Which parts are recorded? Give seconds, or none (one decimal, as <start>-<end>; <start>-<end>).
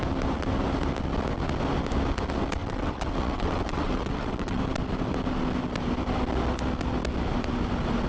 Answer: 0.0-2.6; 4.6-8.1